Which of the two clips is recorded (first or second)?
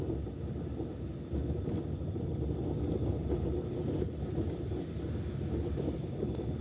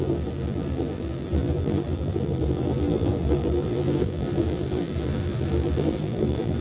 first